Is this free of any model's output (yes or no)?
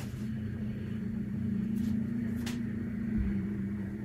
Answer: no